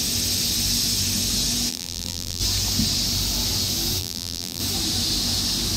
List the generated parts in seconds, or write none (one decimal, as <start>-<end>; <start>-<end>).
1.7-2.4; 4.0-4.6